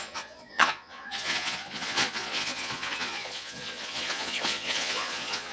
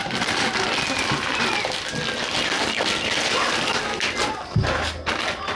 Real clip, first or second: second